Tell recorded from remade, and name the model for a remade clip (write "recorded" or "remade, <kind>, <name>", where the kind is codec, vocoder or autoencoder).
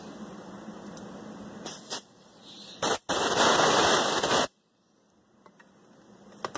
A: recorded